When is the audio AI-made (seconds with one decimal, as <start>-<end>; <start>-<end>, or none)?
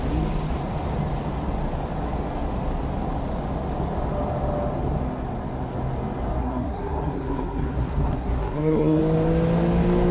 6.4-9.0